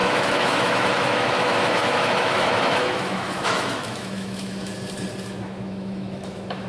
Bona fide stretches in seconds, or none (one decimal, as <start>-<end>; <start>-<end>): 4.7-5.3